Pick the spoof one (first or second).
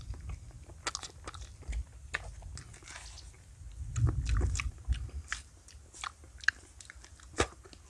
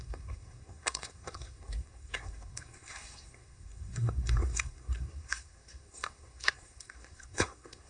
second